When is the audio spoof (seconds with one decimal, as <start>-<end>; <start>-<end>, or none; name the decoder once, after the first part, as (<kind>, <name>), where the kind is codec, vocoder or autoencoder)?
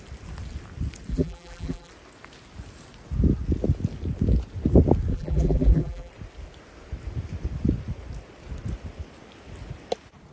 1.1-1.9 (vocoder, BigVGAN v2); 5.1-6.1